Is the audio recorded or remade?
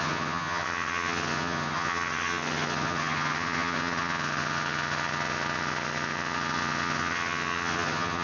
remade